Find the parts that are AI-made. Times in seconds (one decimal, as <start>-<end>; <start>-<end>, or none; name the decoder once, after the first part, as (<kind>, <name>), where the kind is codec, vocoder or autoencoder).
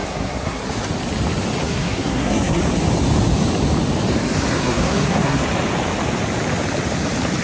0.0-0.6 (codec, SNAC); 1.6-2.6; 4.5-5.4